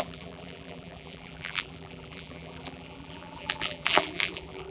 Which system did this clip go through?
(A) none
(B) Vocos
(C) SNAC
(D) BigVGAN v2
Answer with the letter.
D